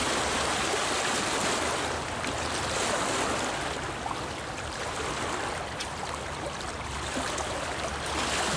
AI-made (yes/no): no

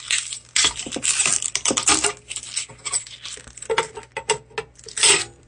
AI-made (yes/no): no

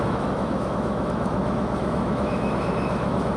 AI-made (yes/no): yes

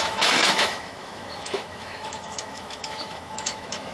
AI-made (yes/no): yes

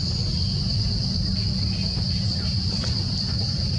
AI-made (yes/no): no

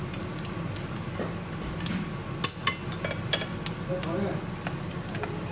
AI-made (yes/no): no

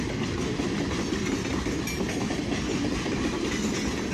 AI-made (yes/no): no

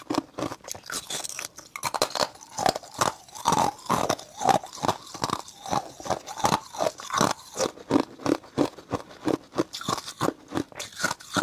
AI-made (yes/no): no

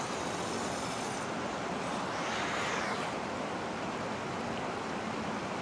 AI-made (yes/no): no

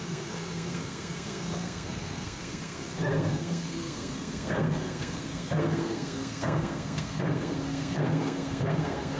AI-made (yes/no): yes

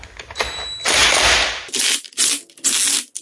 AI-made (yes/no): no